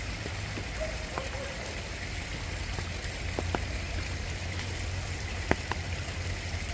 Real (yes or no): yes